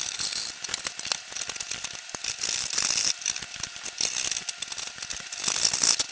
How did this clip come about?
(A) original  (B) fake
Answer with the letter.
A